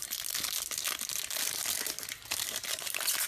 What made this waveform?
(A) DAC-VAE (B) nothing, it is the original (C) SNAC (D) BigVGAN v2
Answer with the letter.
B